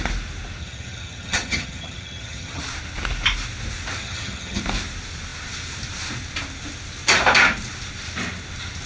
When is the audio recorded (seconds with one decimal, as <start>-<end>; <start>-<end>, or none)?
0.0-0.6; 2.6-4.0; 4.6-8.9